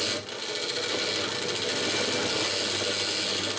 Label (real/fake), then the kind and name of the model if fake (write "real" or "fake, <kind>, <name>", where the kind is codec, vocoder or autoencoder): real